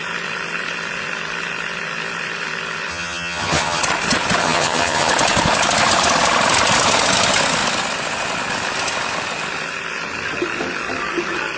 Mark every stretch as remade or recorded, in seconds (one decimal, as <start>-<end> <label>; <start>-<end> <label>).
0.0-2.9 recorded; 2.9-3.8 remade; 3.8-4.4 recorded; 4.4-5.1 remade; 5.1-11.6 recorded